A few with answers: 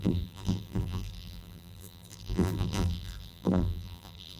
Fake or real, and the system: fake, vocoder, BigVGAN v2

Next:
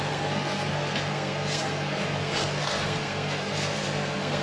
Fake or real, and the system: fake, codec, SNAC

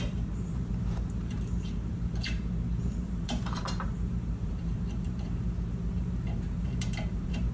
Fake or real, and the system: fake, vocoder, BigVGAN v2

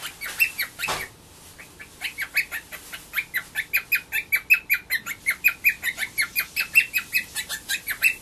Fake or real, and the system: real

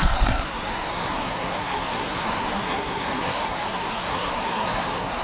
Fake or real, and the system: fake, codec, SNAC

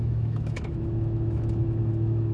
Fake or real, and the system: fake, autoencoder, DAC-VAE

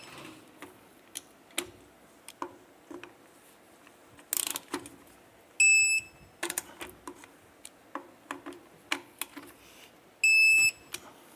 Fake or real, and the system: real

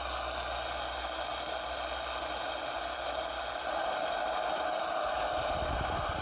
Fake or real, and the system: real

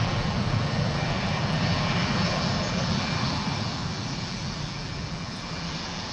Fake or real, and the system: fake, vocoder, BigVGAN v2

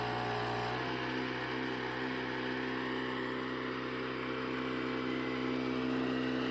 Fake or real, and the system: real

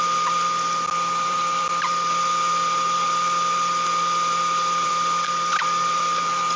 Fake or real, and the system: fake, vocoder, BigVGAN v2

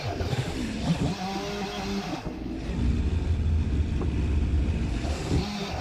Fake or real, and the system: real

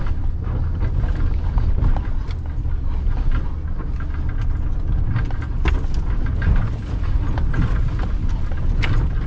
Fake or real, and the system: real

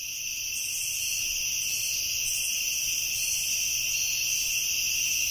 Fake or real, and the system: real